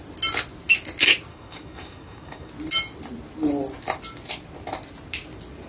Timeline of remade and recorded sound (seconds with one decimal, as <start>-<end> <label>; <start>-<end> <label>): 0.0-1.3 recorded; 1.3-2.5 remade; 2.5-5.7 recorded